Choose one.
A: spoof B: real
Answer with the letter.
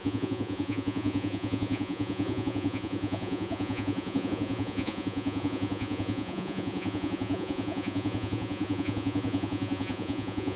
A